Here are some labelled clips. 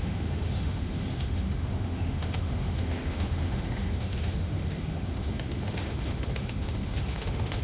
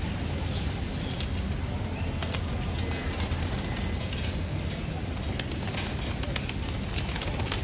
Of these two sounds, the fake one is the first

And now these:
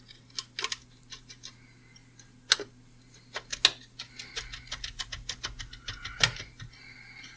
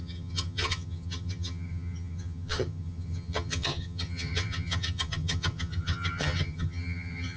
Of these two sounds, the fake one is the second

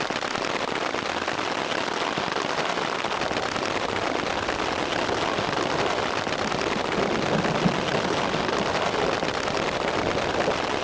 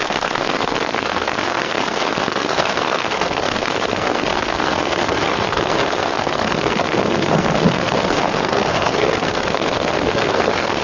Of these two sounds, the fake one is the second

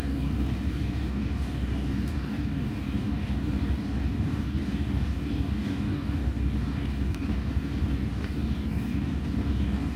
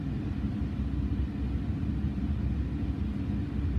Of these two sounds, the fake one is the first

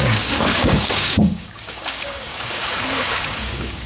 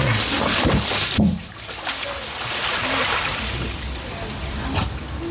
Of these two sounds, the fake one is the first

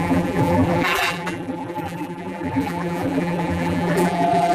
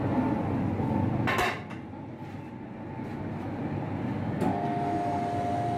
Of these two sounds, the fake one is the first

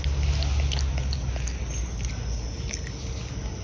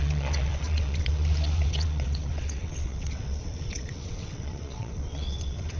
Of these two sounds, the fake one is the second